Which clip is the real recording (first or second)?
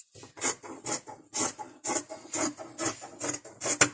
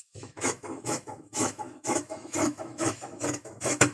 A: first